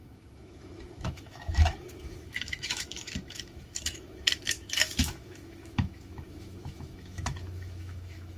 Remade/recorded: remade